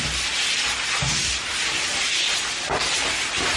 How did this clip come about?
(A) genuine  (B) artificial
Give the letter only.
A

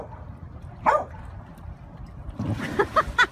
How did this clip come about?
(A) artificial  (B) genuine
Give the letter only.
B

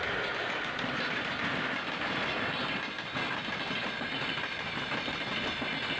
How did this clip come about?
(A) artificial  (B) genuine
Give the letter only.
B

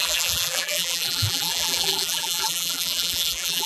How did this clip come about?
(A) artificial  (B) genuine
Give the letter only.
A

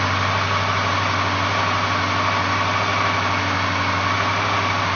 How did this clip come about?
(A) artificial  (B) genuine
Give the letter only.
A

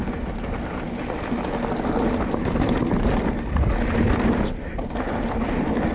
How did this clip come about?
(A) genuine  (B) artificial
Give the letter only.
B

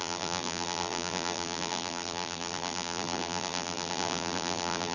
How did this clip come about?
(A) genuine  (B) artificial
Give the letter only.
B